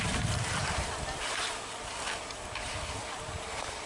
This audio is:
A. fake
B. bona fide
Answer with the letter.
B